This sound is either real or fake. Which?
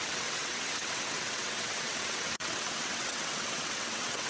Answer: fake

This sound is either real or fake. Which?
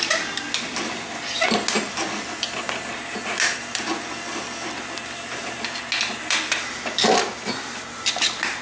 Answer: real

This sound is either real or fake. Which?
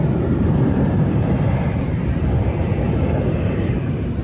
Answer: fake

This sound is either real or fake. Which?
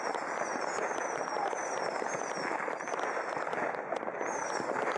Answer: real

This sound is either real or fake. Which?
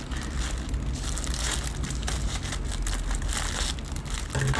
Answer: real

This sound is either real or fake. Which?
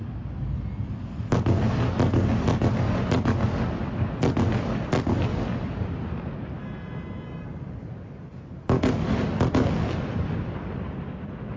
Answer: real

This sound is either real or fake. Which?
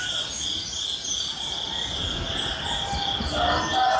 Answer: real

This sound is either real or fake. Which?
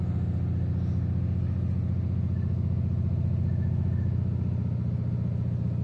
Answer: real